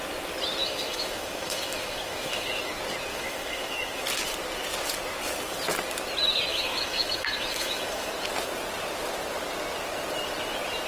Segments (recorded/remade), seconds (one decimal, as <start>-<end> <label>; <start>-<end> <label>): 0.0-0.6 recorded; 0.6-2.7 remade; 2.7-3.1 recorded; 3.1-4.0 remade; 4.0-6.5 recorded; 6.5-8.1 remade; 8.1-10.9 recorded